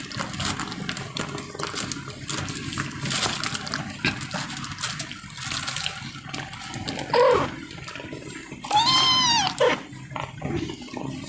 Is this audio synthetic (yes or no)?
no